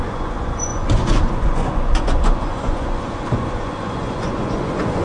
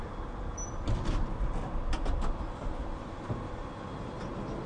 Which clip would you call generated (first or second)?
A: first